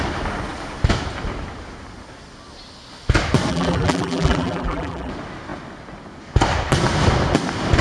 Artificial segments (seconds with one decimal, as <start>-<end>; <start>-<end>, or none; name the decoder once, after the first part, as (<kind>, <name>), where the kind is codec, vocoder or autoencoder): 3.5-5.1 (vocoder, BigVGAN v2)